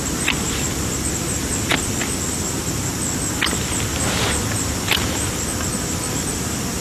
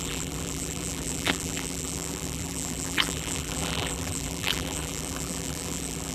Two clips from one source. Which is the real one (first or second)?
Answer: first